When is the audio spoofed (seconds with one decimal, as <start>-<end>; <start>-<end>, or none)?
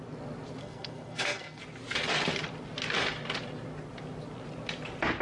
0.6-1.6